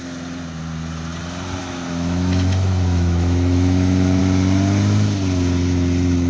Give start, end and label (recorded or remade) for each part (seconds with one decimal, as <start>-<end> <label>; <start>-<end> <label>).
0.0-1.6 recorded; 1.6-4.2 remade; 4.2-6.3 recorded